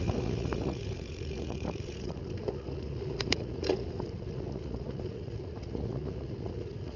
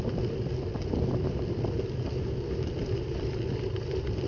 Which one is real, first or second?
second